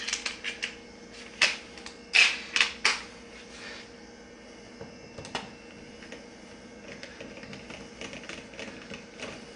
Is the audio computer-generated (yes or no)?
no